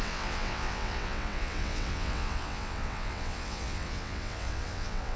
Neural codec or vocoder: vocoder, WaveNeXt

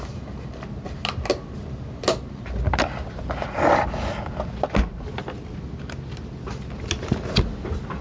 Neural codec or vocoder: none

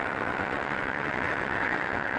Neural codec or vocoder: vocoder, WaveNeXt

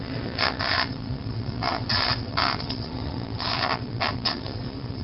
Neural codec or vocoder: vocoder, WaveNeXt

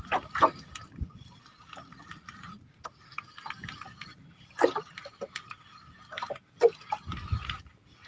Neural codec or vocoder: none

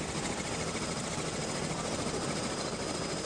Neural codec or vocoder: none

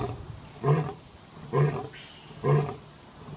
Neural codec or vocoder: none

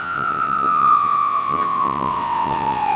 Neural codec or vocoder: vocoder, WaveNeXt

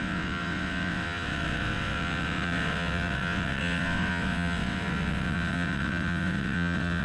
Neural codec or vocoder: vocoder, WaveNeXt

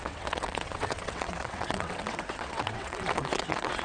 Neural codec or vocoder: vocoder, WaveNeXt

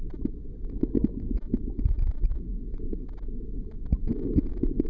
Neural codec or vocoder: none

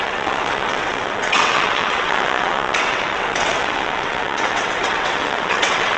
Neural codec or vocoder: vocoder, WaveNeXt